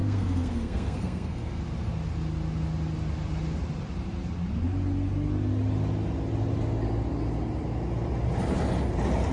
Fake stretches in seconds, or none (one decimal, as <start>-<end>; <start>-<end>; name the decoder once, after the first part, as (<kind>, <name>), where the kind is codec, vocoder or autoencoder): 0.0-1.6 (codec, SNAC)